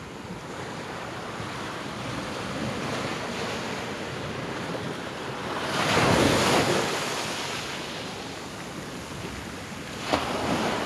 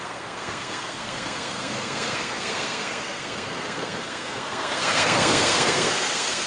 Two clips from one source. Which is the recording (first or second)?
first